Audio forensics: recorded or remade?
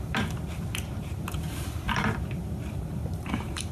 remade